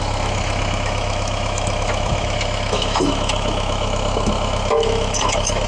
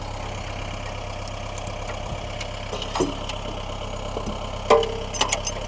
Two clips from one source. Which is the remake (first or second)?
first